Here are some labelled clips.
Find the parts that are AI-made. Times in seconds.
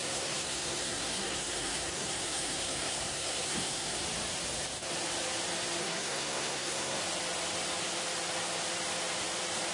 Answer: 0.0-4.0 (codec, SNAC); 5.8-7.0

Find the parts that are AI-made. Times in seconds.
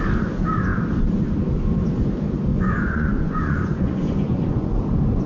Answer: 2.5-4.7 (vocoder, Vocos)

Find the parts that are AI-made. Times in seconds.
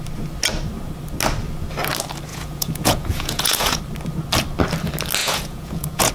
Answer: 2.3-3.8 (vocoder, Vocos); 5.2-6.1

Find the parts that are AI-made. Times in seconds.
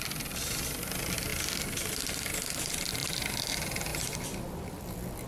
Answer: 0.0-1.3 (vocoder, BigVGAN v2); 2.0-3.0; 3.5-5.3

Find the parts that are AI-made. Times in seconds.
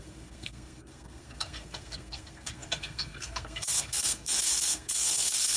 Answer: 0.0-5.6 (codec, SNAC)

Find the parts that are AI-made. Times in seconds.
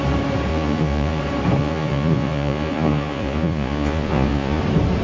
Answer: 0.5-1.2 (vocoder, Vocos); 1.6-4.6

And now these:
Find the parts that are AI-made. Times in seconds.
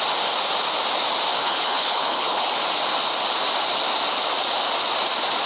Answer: 1.4-2.5 (codec, HILCodec)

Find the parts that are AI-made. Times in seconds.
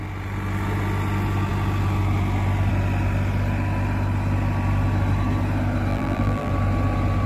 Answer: 5.9-6.5 (vocoder, BigVGAN v2)